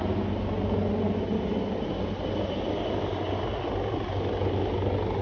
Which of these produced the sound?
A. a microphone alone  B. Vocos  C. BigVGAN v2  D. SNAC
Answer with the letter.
A